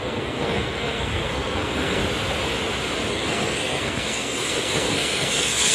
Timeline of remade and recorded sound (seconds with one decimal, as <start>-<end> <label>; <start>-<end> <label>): 0.0-2.0 remade; 2.0-3.1 recorded; 3.1-5.7 remade